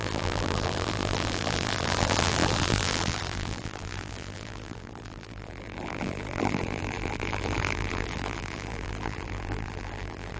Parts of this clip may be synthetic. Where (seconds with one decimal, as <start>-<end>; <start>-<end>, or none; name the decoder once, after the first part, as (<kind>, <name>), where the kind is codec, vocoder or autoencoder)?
0.0-10.4 (vocoder, BigVGAN v2)